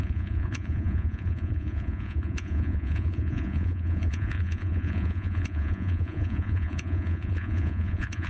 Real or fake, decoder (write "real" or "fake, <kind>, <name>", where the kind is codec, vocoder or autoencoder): fake, vocoder, Vocos